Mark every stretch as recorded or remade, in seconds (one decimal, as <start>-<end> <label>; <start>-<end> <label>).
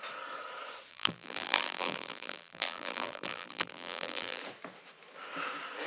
0.0-0.9 recorded; 0.9-4.4 remade; 4.4-5.9 recorded